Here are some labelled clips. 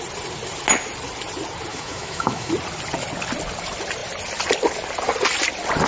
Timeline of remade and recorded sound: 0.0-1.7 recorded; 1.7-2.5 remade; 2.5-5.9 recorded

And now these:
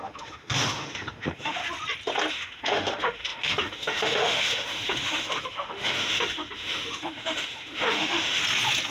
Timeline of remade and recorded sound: 0.0-1.6 remade; 1.6-2.3 recorded; 2.3-8.4 remade; 8.4-8.9 recorded

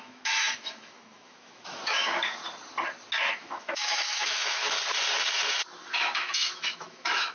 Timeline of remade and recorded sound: 0.0-2.4 remade; 2.4-3.3 recorded; 3.3-4.6 remade; 4.6-5.9 recorded; 5.9-7.3 remade

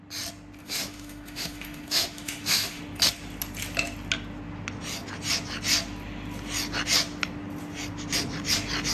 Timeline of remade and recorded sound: 0.0-0.6 recorded; 0.6-2.8 remade; 2.8-8.9 recorded

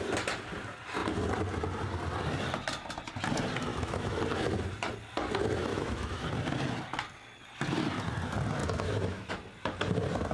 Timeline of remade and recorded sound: 0.0-3.7 recorded; 3.7-4.2 remade; 4.2-5.7 recorded; 5.7-6.3 remade; 6.3-8.6 recorded; 8.6-9.3 remade; 9.3-10.3 recorded

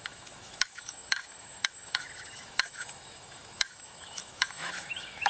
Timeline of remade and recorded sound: 0.0-5.3 remade

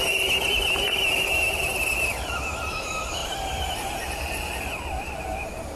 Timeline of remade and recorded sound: 0.0-5.8 recorded